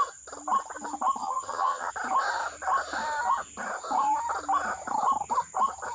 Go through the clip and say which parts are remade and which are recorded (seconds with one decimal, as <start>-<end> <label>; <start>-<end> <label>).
0.0-1.2 recorded; 1.2-1.9 remade; 1.9-5.9 recorded